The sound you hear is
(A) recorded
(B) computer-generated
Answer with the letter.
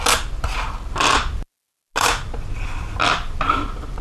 A